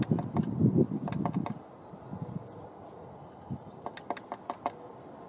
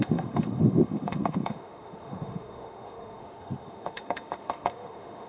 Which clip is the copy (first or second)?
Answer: second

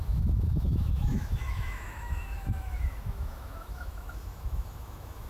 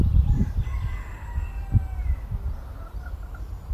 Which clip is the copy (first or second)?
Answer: first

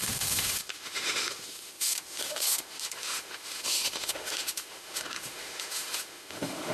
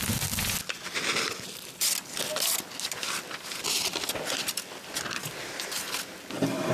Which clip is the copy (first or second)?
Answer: first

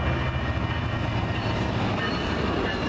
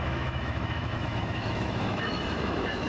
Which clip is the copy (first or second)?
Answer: second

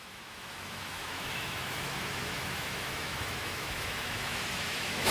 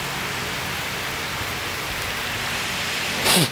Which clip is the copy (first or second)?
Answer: first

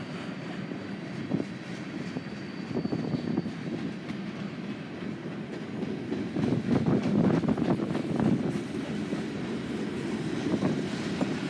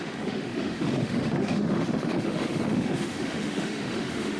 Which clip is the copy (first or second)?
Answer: second